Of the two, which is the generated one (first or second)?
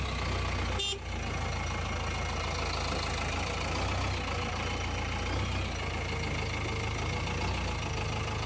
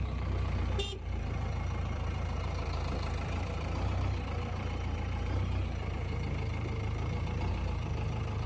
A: second